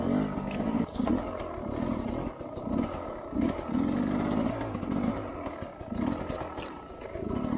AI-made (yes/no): no